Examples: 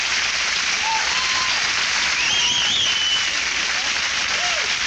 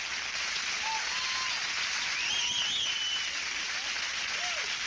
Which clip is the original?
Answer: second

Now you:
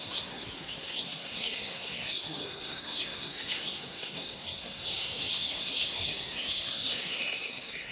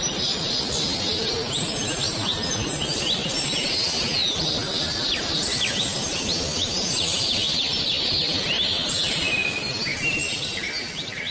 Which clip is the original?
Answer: second